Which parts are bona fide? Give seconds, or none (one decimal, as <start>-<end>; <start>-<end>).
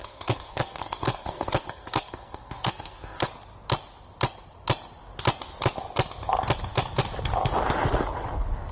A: 3.3-8.7